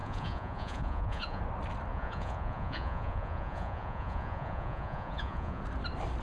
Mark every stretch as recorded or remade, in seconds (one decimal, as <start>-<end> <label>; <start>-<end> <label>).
0.0-1.4 remade; 1.4-1.9 recorded; 1.9-5.6 remade; 5.6-6.2 recorded